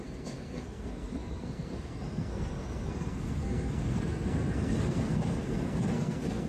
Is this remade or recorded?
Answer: remade